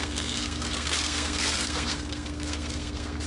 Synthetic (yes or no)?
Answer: yes